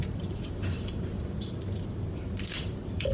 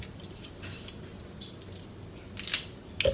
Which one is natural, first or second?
second